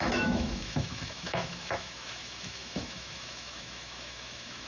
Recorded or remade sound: remade